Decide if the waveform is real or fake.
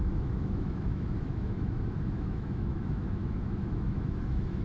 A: fake